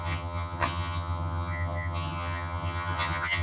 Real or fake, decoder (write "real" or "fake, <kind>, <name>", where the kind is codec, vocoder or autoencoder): fake, vocoder, HiFi-GAN